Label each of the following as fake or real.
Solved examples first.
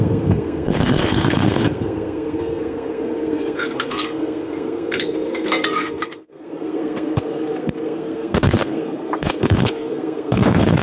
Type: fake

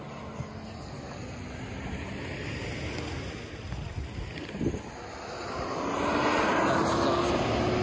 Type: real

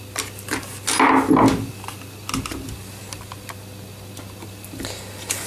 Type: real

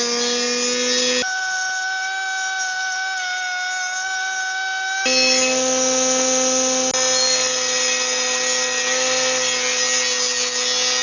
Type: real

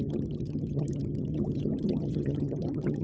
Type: fake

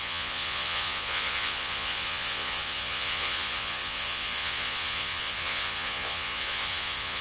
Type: fake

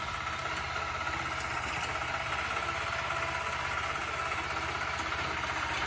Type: real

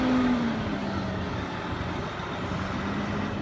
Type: real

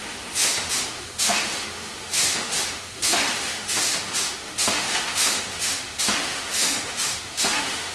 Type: fake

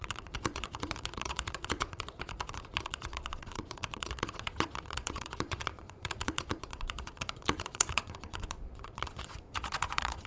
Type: fake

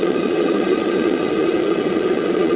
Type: fake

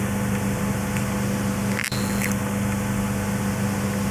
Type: real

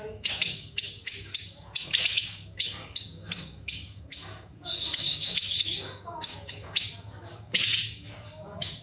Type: fake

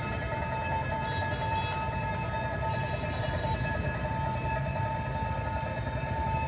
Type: real